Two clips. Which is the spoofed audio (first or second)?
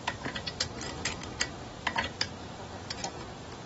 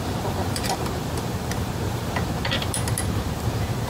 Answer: second